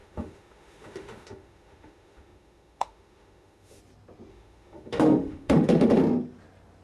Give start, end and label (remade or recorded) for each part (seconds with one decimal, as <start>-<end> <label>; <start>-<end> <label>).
0.0-3.8 remade; 3.8-4.3 recorded; 4.3-6.0 remade; 6.0-6.8 recorded